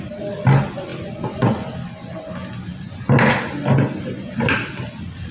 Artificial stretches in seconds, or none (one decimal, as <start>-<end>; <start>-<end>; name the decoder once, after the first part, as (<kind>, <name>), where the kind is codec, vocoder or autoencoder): none